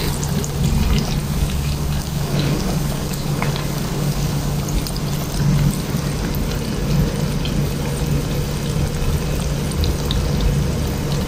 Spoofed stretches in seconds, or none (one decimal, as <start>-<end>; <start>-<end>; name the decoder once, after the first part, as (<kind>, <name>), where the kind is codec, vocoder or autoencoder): 1.2-4.6 (codec, DAC)

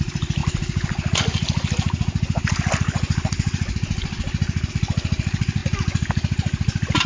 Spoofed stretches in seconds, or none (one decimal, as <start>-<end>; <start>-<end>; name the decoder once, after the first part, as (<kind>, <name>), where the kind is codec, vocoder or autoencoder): 0.0-0.4 (vocoder, BigVGAN v2); 4.7-5.6

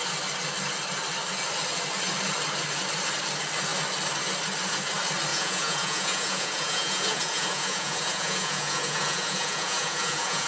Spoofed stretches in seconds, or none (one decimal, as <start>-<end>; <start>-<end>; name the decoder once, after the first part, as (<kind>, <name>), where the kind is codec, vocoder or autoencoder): 5.3-10.5 (vocoder, Vocos)

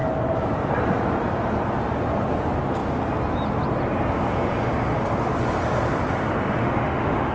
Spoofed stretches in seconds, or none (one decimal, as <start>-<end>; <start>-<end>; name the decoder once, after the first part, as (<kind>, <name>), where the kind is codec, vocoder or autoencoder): 6.6-7.3 (autoencoder, DAC-VAE)

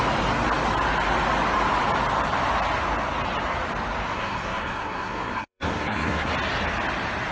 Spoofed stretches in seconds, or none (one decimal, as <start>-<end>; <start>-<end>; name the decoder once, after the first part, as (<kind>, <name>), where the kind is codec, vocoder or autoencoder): 4.1-6.3 (codec, SNAC)

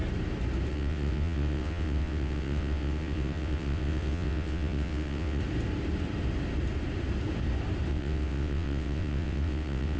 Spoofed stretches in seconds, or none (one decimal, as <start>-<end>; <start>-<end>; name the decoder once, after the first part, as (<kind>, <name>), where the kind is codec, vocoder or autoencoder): 0.7-5.4 (vocoder, WaveNeXt); 7.9-10.0